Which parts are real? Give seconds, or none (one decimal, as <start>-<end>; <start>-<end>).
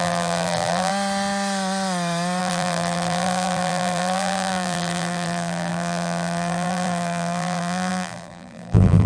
0.9-2.4